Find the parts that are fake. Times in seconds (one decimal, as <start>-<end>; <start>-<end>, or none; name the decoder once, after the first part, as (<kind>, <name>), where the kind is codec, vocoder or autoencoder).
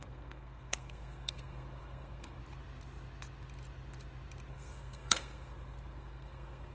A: 0.0-2.4 (codec, SNAC); 4.5-6.7